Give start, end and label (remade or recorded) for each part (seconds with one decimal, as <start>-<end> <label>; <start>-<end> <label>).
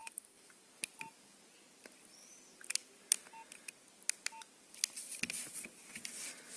0.0-0.7 remade; 0.7-6.6 recorded